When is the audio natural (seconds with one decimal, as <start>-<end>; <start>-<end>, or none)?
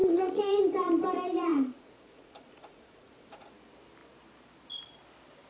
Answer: 0.6-1.5; 3.5-5.5